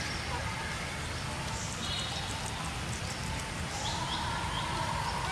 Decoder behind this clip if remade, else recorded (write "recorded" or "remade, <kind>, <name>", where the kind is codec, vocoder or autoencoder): recorded